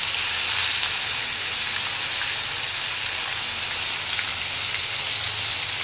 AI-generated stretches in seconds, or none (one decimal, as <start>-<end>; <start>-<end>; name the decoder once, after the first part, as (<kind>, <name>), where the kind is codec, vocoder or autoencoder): none

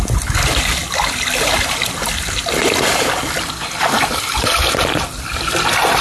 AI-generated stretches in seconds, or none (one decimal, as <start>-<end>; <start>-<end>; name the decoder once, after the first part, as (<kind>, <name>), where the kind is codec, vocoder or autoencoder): none